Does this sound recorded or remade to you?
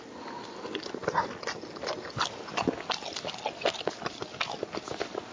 recorded